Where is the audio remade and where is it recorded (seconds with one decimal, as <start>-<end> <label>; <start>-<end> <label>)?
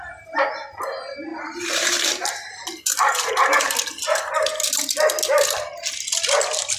0.0-1.3 recorded; 1.3-3.3 remade; 3.3-6.8 recorded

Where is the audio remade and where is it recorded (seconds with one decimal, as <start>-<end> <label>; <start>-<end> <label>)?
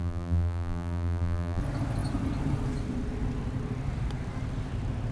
0.0-1.6 remade; 1.6-5.1 recorded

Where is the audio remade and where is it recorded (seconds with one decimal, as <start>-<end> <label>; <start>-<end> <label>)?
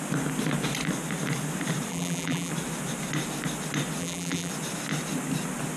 0.0-1.9 recorded; 1.9-2.5 remade; 2.5-4.0 recorded; 4.0-4.5 remade; 4.5-5.8 recorded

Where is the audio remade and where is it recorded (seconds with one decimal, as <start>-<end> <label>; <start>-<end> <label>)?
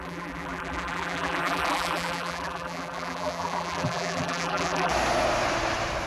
0.0-4.9 remade; 4.9-6.1 recorded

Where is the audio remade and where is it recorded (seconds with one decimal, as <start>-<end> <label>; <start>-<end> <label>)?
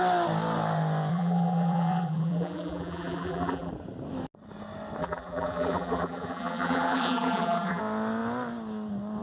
0.0-1.1 recorded; 1.1-3.7 remade; 3.7-5.0 recorded; 5.0-7.8 remade; 7.8-9.2 recorded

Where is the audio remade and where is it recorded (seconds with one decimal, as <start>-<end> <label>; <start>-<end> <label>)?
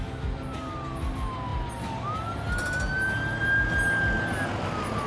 0.0-5.1 recorded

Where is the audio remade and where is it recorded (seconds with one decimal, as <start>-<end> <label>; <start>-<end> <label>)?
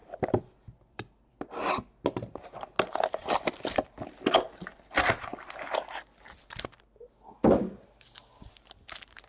0.0-1.3 remade; 1.3-3.2 recorded; 3.2-3.9 remade; 3.9-9.3 recorded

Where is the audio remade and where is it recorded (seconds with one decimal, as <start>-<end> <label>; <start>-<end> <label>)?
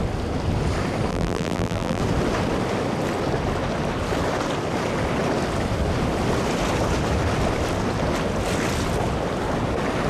0.0-1.1 recorded; 1.1-2.0 remade; 2.0-10.1 recorded